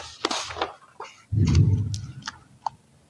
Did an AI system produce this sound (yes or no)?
no